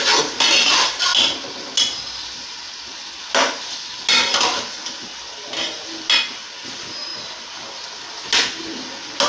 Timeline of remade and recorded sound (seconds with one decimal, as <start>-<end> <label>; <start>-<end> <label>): 0.0-7.1 recorded; 7.1-7.9 remade; 7.9-9.3 recorded